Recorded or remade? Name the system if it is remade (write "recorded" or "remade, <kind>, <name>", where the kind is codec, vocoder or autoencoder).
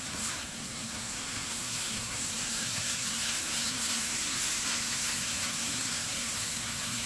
remade, codec, SNAC